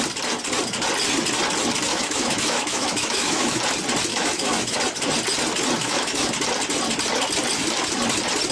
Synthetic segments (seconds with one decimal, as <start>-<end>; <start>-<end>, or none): 1.9-3.6; 4.1-4.8; 5.8-6.3